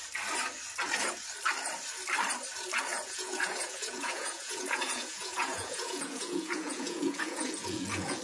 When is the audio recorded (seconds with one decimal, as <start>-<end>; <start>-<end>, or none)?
0.0-2.9